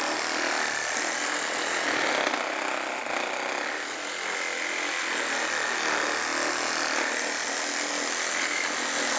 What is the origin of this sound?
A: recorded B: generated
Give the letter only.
A